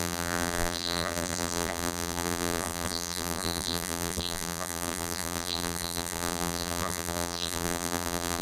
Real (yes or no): no